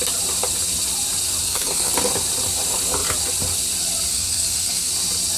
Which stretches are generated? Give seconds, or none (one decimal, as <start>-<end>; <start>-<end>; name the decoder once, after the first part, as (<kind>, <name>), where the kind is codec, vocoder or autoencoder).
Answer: 1.4-1.9 (codec, SNAC); 4.1-4.9